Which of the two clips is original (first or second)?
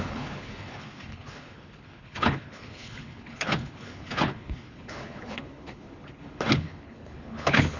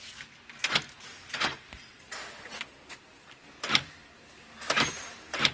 second